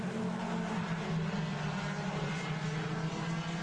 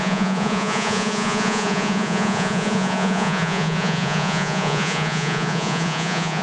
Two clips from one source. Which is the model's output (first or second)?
second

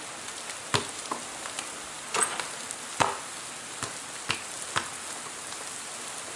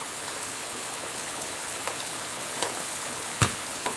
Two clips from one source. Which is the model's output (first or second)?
second